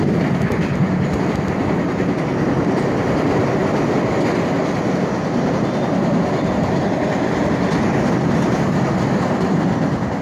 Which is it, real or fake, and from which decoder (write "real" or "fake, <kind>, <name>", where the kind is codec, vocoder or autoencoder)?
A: real